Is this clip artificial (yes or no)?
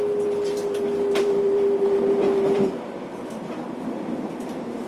yes